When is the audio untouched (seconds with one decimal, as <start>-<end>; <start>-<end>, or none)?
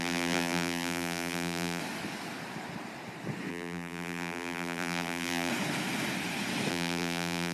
1.8-3.5; 5.5-6.7